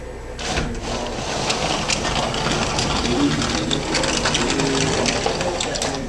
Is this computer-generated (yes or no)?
no